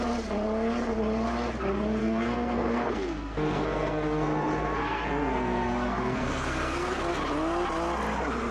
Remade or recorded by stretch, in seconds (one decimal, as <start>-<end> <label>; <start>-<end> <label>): 0.0-2.0 recorded; 2.0-7.1 remade; 7.1-8.5 recorded